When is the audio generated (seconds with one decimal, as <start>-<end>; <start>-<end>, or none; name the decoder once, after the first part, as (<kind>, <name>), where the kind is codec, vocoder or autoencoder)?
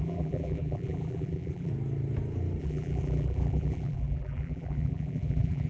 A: 0.0-1.7 (vocoder, BigVGAN v2); 2.6-5.7